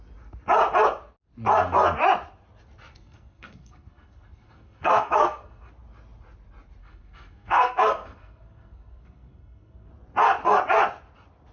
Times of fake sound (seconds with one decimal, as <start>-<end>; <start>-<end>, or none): 2.9-5.7; 6.8-9.9